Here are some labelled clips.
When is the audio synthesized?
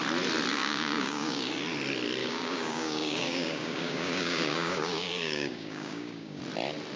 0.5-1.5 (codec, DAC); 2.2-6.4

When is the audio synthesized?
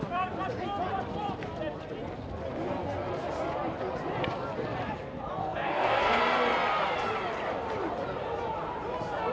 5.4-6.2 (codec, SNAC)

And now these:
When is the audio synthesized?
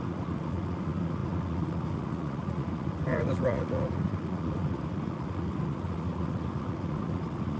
0.0-7.6 (vocoder, Vocos)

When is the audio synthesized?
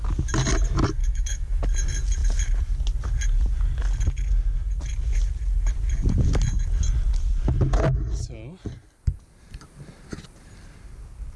1.0-1.6 (autoencoder, DAC-VAE)